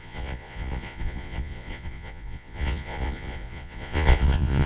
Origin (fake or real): fake